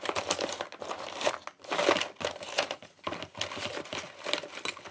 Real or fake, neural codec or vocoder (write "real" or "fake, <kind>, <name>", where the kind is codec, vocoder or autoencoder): real